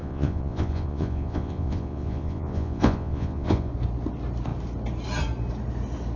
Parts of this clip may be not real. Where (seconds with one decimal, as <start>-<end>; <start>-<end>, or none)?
0.0-3.7